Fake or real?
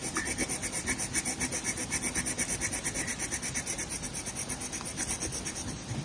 real